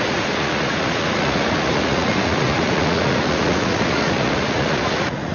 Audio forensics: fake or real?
fake